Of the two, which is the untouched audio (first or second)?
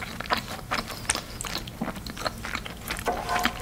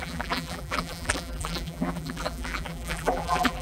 first